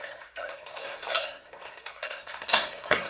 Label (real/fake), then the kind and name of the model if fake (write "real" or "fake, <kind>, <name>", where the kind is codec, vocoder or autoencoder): fake, codec, SNAC